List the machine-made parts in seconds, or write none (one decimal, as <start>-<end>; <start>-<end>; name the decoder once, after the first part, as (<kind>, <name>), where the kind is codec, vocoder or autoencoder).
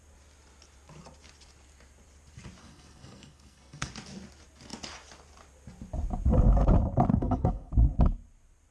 2.6-3.9 (codec, SNAC); 7.1-7.7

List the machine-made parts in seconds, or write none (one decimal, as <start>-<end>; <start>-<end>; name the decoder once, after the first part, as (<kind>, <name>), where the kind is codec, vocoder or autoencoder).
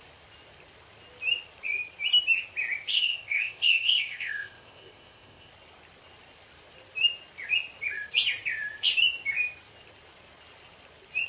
2.9-5.5 (codec, ZipCodec)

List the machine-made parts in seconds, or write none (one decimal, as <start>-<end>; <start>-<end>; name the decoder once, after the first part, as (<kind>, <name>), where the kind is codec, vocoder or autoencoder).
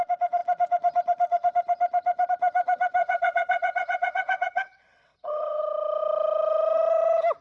3.0-5.6 (vocoder, WaveNeXt)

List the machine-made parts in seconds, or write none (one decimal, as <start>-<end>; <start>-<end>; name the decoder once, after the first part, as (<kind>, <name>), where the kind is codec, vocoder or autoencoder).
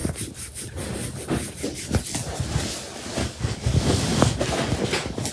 3.2-4.3 (codec, DAC)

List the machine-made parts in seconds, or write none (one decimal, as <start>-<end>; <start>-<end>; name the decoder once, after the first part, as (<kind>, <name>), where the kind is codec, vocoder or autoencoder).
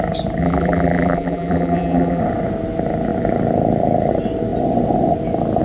0.4-2.2 (vocoder, BigVGAN v2)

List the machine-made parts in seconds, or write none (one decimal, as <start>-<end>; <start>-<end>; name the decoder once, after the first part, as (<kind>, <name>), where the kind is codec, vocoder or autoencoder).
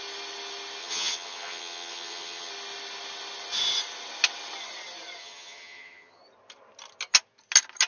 0.8-2.5 (vocoder, HiFi-GAN); 5.2-6.2